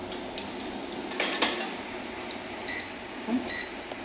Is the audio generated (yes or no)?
no